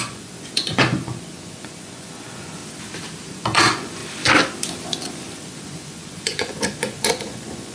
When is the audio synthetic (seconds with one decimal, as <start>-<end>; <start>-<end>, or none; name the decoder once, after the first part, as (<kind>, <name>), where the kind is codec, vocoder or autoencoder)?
0.0-2.6 (vocoder, Vocos); 3.3-4.0; 4.7-7.7